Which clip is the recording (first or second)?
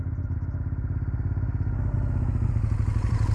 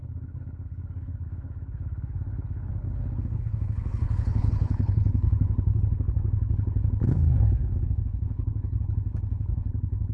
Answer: first